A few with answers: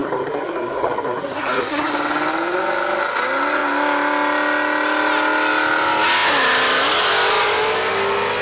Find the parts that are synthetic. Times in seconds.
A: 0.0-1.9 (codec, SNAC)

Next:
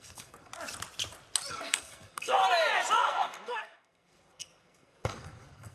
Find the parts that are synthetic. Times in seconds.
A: 0.0-0.5 (codec, SNAC); 1.5-2.4; 3.0-5.7

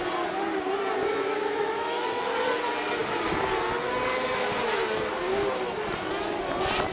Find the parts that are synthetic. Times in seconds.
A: 1.1-2.3 (autoencoder, DAC-VAE)

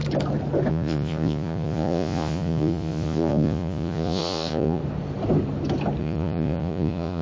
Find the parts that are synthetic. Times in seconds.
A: 0.7-4.8 (vocoder, Vocos); 6.0-7.2